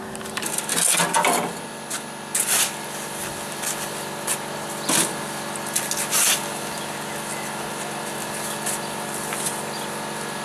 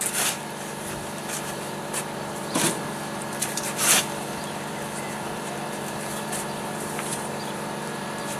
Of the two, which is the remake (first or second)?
second